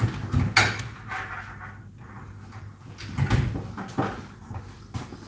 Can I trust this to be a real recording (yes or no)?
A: yes